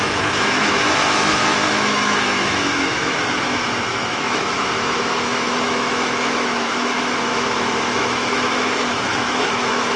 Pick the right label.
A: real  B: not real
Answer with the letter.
B